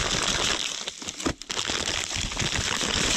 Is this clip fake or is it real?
real